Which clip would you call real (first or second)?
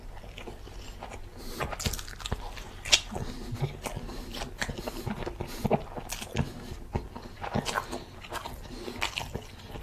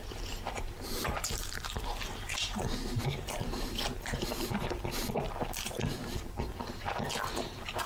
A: first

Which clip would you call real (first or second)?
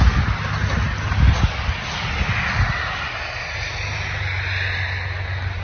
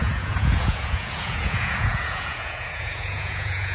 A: first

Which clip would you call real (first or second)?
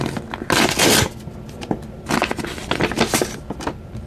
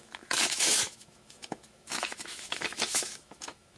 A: first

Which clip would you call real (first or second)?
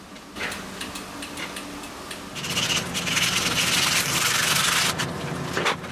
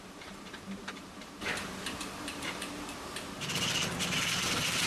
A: first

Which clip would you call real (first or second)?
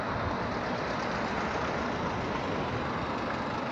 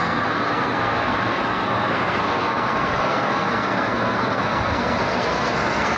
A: first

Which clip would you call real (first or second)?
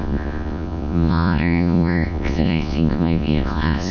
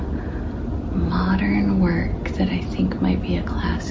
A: second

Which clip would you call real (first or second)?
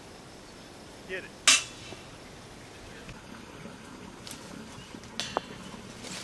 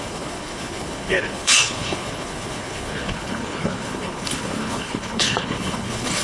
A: first